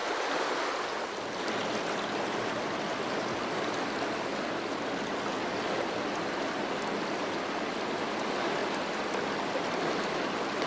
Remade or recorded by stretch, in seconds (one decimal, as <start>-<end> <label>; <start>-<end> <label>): 0.0-10.7 recorded